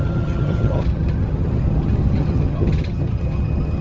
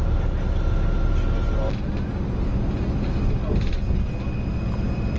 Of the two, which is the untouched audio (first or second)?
second